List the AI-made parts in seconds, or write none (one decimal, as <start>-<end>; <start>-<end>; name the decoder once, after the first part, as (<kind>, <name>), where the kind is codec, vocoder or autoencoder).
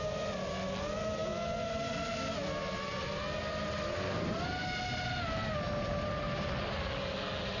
none